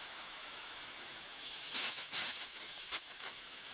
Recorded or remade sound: remade